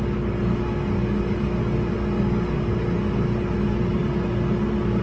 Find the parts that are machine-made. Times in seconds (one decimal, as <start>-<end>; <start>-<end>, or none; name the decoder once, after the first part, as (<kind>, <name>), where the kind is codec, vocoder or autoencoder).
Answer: none